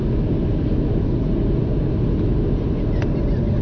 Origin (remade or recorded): recorded